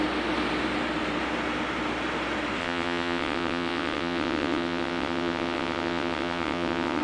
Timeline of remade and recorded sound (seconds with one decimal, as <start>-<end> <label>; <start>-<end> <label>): 0.0-2.6 recorded; 2.6-7.0 remade